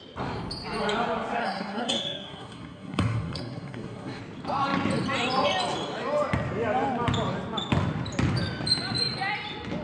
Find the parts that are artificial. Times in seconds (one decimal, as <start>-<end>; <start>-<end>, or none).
1.4-4.2